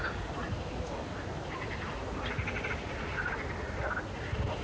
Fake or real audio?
real